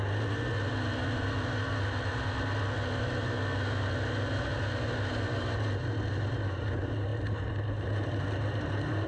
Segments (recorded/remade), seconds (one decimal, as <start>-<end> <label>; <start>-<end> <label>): 0.0-9.1 recorded